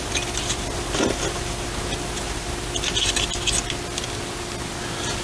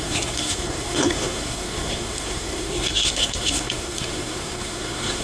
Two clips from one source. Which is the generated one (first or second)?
second